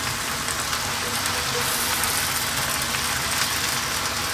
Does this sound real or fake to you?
real